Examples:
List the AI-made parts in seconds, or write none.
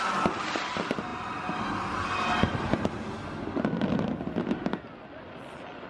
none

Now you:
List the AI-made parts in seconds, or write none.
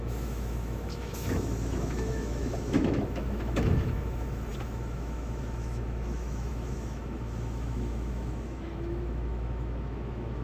0.0-10.4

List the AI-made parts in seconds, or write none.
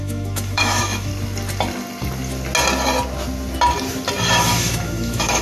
0.0-1.1; 4.3-5.4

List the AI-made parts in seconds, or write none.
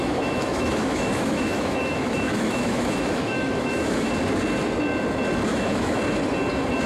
0.0-4.1; 5.5-6.0